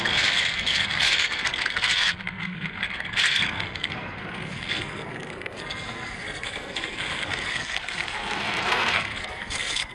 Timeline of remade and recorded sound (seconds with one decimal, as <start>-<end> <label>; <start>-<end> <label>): 0.0-9.9 remade